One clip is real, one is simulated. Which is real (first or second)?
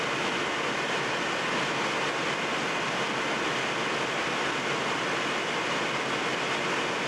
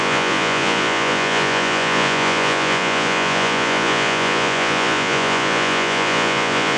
first